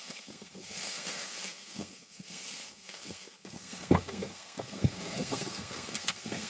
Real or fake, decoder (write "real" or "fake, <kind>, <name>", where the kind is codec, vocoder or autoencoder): fake, codec, SNAC